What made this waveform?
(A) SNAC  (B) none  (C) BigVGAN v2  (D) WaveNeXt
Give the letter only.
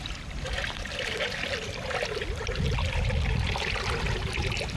B